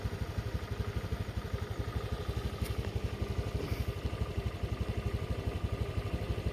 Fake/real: real